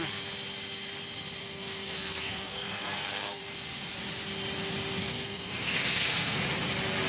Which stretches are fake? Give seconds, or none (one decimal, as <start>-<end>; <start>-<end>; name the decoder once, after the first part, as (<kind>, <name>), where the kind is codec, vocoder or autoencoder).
1.4-3.4 (codec, SNAC); 5.0-6.4